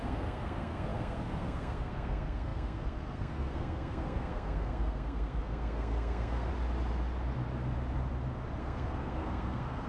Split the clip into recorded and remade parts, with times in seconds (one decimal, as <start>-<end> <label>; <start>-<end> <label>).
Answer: 0.0-6.5 remade; 6.5-8.6 recorded; 8.6-9.9 remade